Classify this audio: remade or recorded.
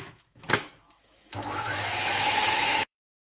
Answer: remade